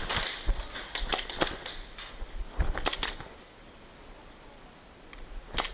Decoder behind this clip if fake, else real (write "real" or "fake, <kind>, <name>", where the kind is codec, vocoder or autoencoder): real